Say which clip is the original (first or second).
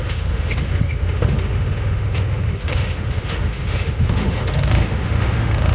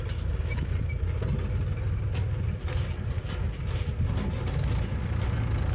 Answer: second